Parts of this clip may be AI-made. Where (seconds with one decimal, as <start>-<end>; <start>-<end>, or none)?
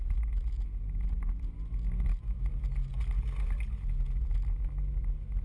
none